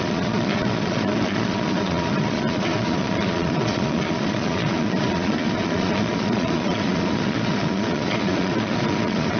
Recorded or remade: remade